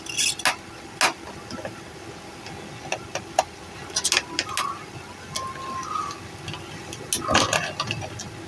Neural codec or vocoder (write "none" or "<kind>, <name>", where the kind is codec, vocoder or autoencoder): none